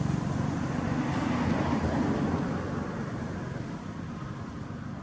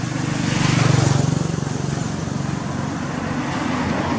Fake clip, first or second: first